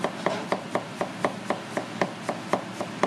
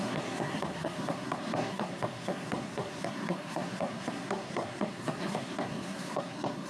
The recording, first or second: first